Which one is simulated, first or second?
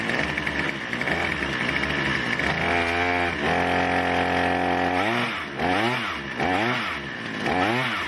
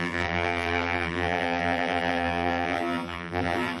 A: second